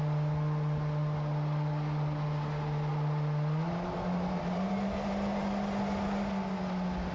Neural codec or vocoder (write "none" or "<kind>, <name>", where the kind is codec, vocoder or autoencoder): none